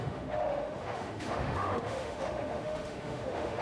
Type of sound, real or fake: fake